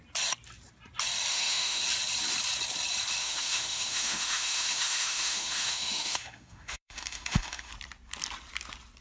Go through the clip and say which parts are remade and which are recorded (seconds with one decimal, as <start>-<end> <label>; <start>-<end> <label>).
0.0-1.3 recorded; 1.3-1.8 remade; 1.8-3.2 recorded; 3.2-7.7 remade; 7.7-9.0 recorded